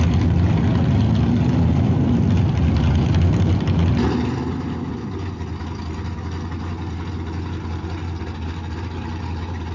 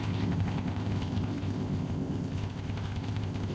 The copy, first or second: second